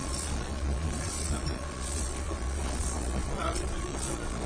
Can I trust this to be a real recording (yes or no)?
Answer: no